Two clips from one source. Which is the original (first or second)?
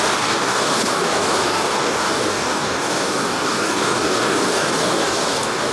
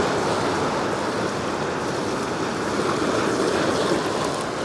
second